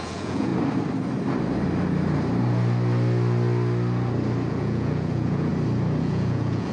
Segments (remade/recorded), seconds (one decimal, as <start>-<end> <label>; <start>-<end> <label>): 0.0-0.5 remade; 0.5-4.5 recorded; 4.5-5.5 remade; 5.5-6.0 recorded; 6.0-6.7 remade